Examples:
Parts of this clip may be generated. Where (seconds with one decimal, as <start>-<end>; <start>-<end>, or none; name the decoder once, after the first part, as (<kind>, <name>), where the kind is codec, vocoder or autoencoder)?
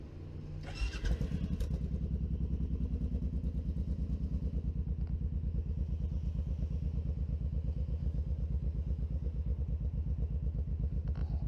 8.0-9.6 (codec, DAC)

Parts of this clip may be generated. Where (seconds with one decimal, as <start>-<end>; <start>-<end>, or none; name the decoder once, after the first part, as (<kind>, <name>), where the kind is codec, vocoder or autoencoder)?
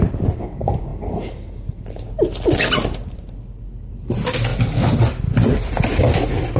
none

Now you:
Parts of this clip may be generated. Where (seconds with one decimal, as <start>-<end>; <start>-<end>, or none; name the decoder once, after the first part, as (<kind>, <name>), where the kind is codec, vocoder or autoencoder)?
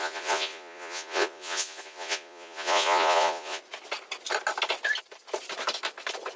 0.0-3.6 (vocoder, Vocos)